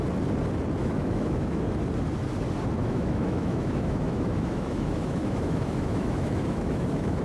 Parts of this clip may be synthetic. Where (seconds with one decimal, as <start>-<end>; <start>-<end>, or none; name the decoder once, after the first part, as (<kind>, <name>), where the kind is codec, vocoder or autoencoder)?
0.8-1.8 (autoencoder, DAC-VAE); 2.8-7.2